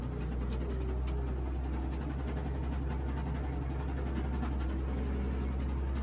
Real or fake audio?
real